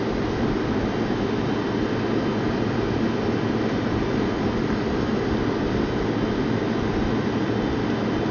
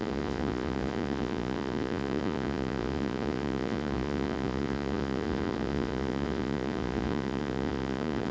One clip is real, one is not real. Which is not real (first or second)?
second